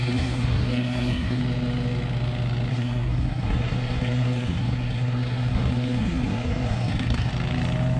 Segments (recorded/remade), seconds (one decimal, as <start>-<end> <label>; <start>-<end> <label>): 0.0-1.4 remade; 1.4-2.7 recorded; 2.7-7.3 remade; 7.3-8.0 recorded